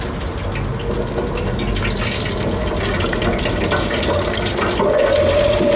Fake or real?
real